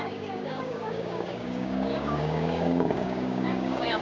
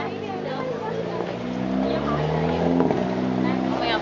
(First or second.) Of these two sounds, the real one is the second